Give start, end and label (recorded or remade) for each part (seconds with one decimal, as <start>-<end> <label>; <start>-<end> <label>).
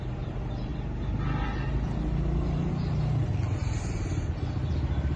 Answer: 0.0-5.2 recorded